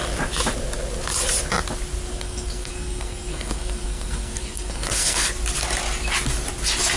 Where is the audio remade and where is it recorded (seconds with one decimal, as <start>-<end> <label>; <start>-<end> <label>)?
0.0-2.1 recorded; 2.1-5.3 remade; 5.3-7.0 recorded